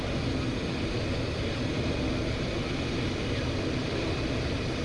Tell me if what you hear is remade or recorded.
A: recorded